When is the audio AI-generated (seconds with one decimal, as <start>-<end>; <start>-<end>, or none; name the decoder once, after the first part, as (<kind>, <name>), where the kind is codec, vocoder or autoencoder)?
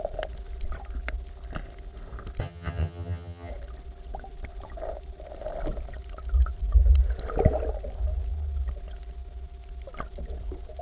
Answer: 2.4-3.5 (vocoder, HiFi-GAN)